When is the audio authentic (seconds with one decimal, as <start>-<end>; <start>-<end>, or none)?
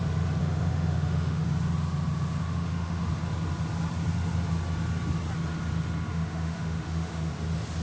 0.0-0.4; 1.4-2.4; 3.0-6.1; 7.3-7.8